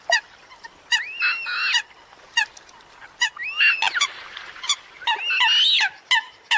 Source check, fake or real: real